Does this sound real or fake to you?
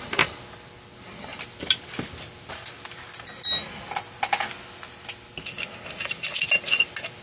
real